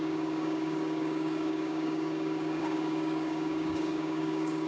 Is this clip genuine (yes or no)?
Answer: no